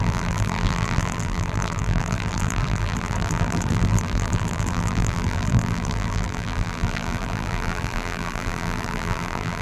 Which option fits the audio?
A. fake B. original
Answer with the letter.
A